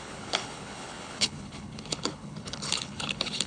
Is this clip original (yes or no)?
no